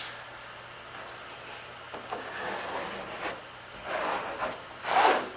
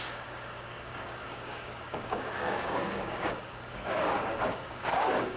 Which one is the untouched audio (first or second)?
first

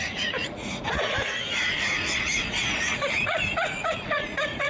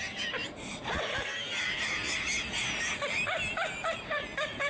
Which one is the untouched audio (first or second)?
second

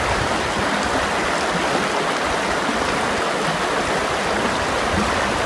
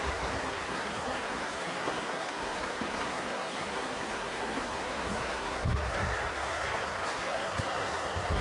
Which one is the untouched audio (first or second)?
first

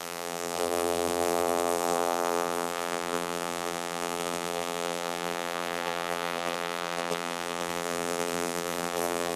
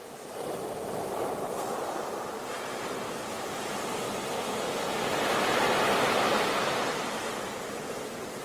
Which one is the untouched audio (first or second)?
second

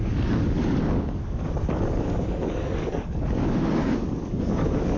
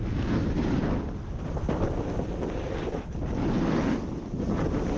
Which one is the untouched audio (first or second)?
second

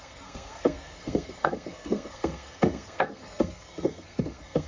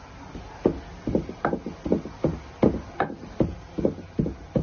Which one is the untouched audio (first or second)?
second